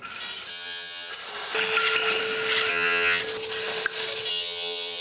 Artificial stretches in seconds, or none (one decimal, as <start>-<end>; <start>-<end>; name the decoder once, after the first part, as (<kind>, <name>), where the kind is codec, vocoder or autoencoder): 0.5-1.1 (vocoder, HiFi-GAN); 2.7-3.2; 4.3-5.0